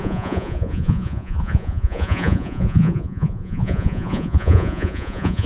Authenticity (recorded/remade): remade